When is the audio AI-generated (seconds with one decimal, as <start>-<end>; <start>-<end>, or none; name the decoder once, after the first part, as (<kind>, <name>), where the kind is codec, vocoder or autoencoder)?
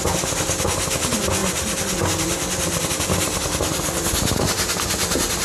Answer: none